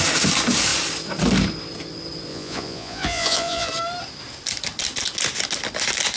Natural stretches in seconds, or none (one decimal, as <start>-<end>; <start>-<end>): 0.0-2.3; 3.7-6.2